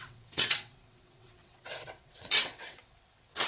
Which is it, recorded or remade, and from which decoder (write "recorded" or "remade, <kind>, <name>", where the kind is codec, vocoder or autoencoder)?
remade, vocoder, WaveNeXt